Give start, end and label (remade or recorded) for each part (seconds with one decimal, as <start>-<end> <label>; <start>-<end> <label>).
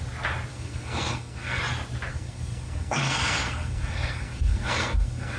0.0-0.5 recorded; 0.5-1.6 remade; 1.6-2.1 recorded; 2.1-5.4 remade